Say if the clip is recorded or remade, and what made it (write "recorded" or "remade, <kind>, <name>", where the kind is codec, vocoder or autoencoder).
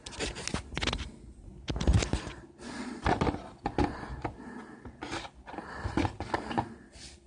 recorded